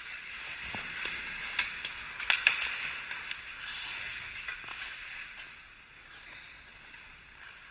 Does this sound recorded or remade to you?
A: recorded